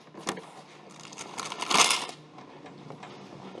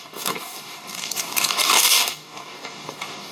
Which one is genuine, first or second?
first